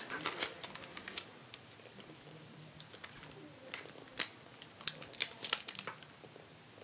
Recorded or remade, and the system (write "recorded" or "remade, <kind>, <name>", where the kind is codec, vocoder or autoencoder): recorded